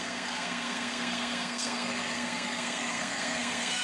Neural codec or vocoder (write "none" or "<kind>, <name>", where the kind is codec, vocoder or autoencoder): codec, SNAC